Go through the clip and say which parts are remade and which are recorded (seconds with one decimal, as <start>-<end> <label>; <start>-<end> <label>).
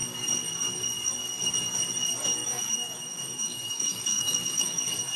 0.0-2.4 recorded; 2.4-4.8 remade; 4.8-5.2 recorded